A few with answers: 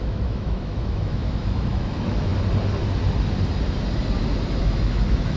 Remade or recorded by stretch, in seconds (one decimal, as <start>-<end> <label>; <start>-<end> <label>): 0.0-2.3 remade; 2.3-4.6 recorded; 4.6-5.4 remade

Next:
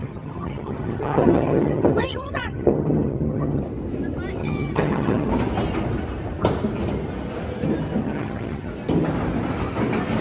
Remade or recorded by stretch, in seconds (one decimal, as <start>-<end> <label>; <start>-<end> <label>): 0.0-3.6 remade; 3.6-4.4 recorded; 4.4-5.3 remade; 5.3-8.0 recorded; 8.0-8.7 remade; 8.7-10.2 recorded

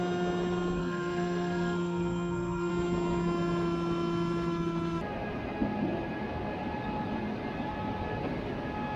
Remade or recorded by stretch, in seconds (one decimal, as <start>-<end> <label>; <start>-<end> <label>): 0.0-0.8 recorded; 0.8-2.7 remade; 2.7-9.0 recorded

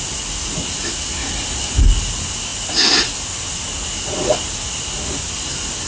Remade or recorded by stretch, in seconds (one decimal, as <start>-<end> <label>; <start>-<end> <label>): 0.0-5.9 recorded